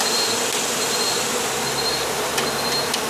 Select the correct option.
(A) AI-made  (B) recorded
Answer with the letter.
B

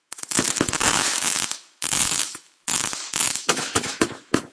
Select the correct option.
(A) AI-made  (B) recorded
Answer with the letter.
A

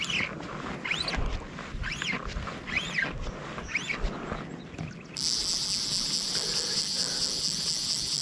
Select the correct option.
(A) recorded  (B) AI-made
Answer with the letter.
A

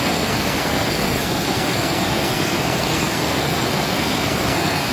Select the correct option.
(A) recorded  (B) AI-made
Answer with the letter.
B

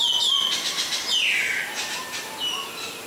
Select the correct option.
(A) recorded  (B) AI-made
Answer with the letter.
A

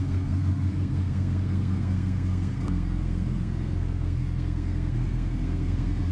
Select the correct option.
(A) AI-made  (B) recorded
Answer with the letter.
A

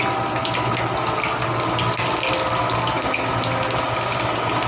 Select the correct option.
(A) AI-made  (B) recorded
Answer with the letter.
B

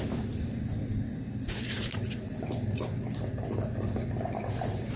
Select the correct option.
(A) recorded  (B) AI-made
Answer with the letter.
A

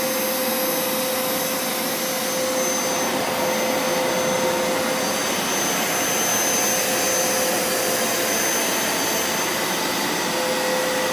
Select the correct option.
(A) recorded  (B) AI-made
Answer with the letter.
A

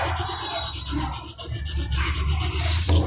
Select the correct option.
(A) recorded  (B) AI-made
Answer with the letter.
A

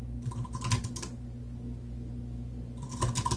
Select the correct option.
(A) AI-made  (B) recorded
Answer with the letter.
B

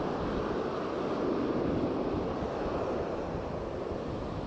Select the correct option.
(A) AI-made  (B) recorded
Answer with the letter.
B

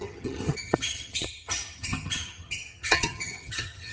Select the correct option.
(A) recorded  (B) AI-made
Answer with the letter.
B